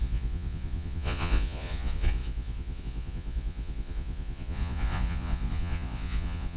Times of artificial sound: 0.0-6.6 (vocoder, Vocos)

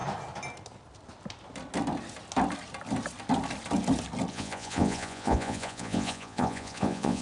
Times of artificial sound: 4.3-7.2 (vocoder, Vocos)

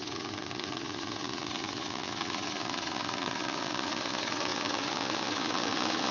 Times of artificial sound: 0.0-6.1 (vocoder, Vocos)

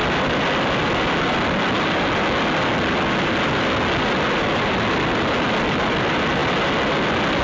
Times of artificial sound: none